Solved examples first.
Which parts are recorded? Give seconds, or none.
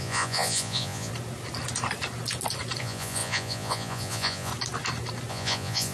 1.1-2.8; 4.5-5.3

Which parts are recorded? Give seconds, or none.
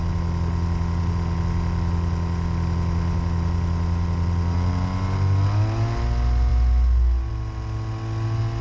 0.0-8.6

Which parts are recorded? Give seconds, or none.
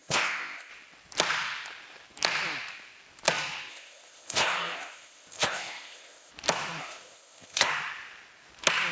0.7-3.7; 6.3-6.8; 7.7-8.9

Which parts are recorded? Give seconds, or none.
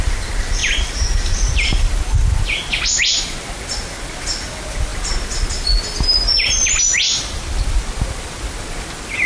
0.0-0.6; 1.9-9.3